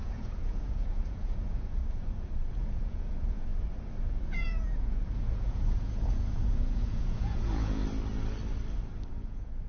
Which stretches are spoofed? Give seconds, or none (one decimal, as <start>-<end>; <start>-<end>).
0.0-1.8; 2.5-3.5; 4.0-7.8; 9.1-9.7